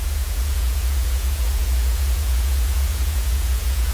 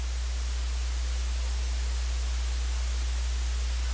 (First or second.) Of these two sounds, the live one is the second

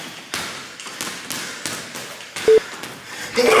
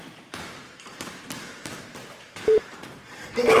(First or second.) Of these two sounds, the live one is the first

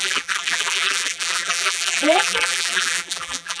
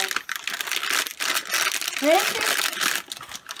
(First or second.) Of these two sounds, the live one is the second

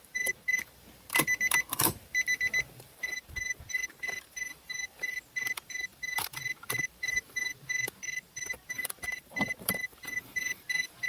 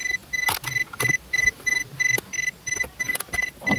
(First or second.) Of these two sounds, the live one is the second